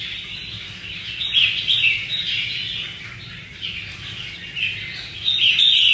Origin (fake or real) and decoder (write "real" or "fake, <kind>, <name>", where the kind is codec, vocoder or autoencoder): real